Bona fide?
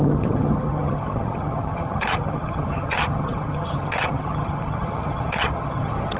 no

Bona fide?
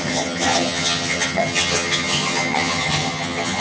no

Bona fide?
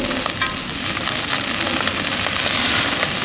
yes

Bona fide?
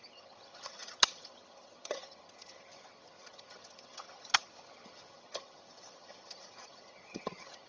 no